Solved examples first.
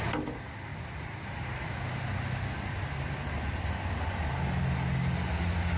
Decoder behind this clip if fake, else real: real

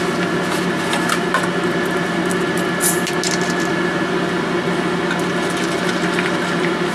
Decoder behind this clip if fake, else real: real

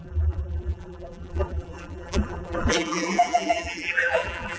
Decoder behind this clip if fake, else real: fake, vocoder, BigVGAN v2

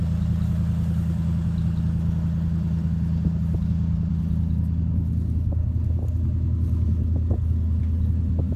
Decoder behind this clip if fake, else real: real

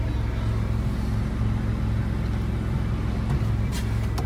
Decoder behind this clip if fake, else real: real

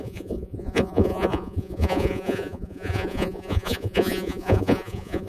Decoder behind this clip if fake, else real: fake, vocoder, Vocos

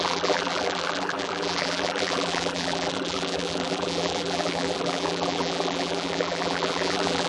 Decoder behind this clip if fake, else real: fake, vocoder, BigVGAN v2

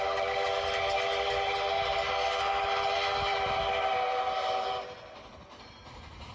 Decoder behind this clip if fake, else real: real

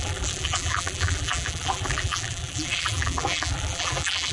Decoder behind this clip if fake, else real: fake, vocoder, BigVGAN v2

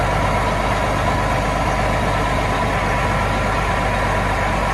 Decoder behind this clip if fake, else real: real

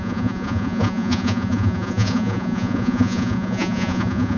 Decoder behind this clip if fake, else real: fake, vocoder, Vocos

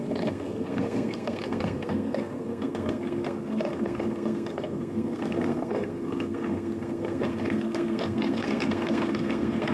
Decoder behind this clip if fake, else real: fake, codec, SNAC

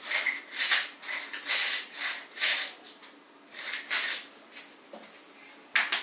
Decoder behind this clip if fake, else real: real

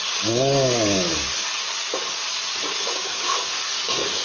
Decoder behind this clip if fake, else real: fake, codec, DAC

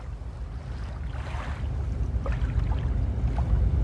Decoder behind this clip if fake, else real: real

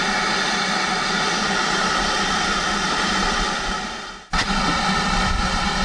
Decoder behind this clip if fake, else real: real